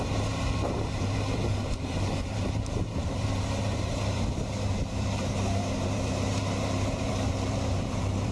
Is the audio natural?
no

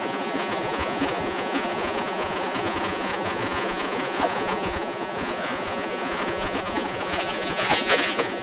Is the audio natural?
no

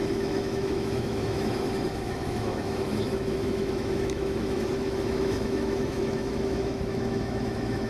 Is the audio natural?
no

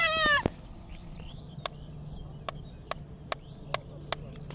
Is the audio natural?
yes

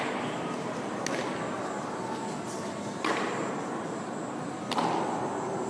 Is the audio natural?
yes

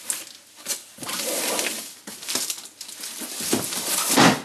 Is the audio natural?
yes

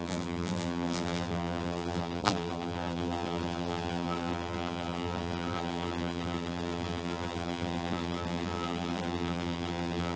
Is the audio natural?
no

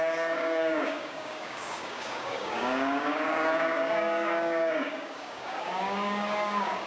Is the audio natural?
no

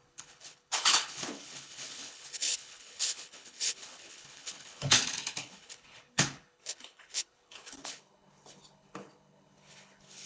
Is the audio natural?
no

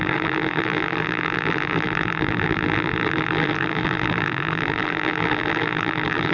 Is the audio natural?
no